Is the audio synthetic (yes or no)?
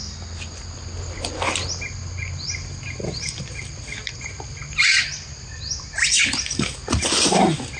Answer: no